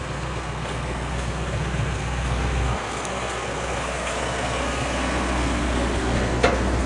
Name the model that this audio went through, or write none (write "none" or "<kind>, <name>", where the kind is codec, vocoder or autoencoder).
codec, SNAC